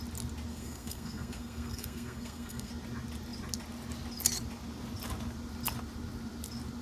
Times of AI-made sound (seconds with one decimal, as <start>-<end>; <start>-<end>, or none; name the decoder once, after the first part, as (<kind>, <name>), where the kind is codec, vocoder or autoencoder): 0.5-2.7 (codec, SNAC)

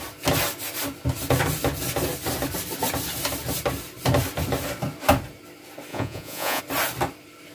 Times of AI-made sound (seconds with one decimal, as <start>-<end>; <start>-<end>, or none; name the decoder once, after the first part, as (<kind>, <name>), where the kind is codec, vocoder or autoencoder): 5.9-6.6 (vocoder, Vocos)

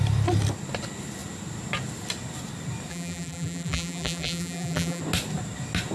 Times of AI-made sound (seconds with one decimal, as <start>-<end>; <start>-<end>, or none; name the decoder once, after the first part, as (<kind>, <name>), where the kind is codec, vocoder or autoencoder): 2.9-5.0 (vocoder, BigVGAN v2)